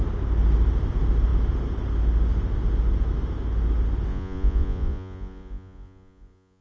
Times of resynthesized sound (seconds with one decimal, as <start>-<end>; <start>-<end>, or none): 4.1-6.6